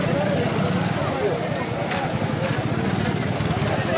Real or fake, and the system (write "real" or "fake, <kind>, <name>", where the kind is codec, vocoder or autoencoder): real